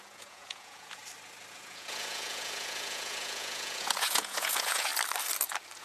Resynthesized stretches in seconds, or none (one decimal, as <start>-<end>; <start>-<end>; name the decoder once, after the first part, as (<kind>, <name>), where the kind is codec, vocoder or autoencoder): 0.0-1.0 (vocoder, Vocos); 1.5-4.9